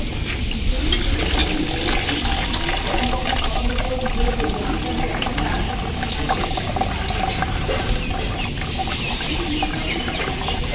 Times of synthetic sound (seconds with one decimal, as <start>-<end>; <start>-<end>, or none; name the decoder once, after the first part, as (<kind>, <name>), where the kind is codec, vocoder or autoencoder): 3.2-3.8 (vocoder, BigVGAN v2); 8.8-10.2